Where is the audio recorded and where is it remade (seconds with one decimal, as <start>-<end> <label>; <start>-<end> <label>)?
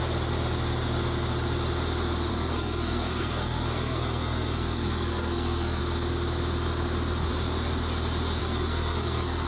0.0-2.3 recorded; 2.3-5.8 remade; 5.8-8.4 recorded; 8.4-9.5 remade